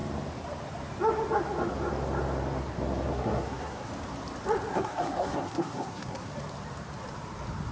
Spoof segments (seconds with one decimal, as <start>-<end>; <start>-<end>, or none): 3.1-3.9; 4.7-6.3